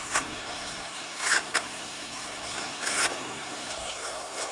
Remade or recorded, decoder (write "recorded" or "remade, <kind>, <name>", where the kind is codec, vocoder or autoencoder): remade, codec, SNAC